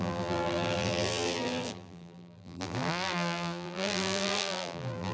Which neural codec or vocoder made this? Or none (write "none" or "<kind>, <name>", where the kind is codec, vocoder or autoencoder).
vocoder, BigVGAN v2